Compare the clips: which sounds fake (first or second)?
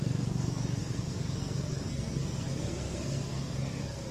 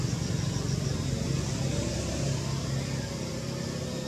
first